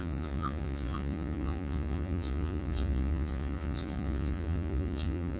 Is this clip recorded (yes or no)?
no